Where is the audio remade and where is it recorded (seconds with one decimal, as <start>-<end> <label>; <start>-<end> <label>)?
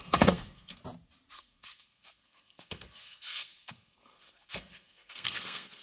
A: 0.0-0.8 remade; 0.8-1.3 recorded; 1.3-5.8 remade